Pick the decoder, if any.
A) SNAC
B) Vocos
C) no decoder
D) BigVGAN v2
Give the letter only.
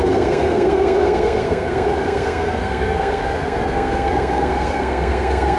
A